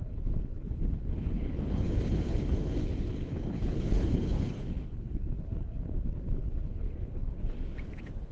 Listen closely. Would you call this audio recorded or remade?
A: remade